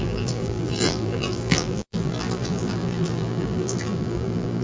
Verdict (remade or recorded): remade